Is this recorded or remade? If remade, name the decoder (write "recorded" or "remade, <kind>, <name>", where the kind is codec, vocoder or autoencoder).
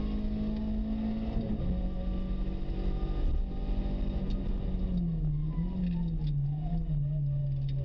recorded